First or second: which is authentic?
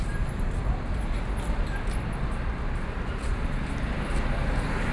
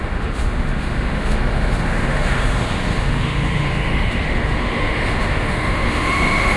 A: first